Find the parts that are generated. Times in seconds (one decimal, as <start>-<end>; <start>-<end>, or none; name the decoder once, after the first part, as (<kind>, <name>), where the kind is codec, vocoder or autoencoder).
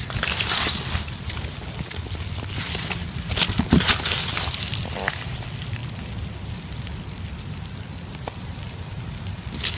none